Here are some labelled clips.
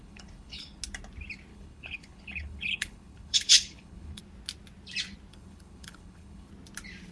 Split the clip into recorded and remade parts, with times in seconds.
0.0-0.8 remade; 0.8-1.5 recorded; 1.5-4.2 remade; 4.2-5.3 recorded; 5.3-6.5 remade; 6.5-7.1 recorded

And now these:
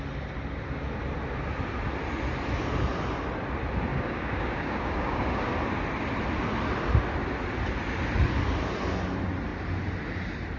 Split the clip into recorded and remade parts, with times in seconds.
0.0-3.9 recorded; 3.9-5.5 remade; 5.5-10.6 recorded

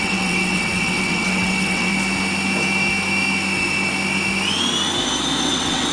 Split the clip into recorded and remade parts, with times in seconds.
0.0-1.9 remade; 1.9-5.4 recorded; 5.4-5.9 remade